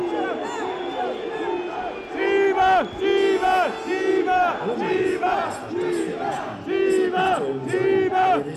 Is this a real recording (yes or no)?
yes